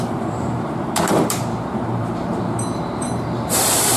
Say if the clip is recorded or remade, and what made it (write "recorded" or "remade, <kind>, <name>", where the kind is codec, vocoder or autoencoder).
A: remade, vocoder, BigVGAN v2